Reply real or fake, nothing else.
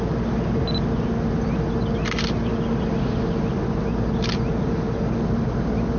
real